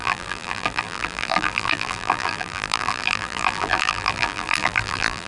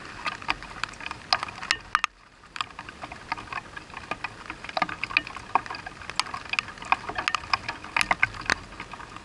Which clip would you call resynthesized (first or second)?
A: first